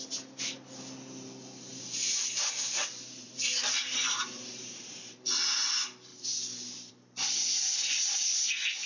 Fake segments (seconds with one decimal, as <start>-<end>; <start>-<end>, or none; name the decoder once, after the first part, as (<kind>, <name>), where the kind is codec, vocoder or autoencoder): 1.7-5.3 (vocoder, BigVGAN v2); 6.1-6.9